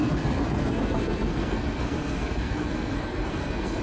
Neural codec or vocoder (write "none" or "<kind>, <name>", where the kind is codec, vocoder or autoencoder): codec, SNAC